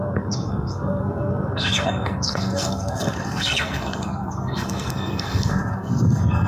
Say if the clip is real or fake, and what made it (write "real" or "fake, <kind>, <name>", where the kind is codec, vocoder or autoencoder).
fake, codec, SNAC